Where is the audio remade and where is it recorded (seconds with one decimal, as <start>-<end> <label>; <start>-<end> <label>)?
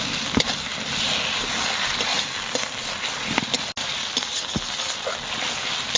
0.0-6.0 recorded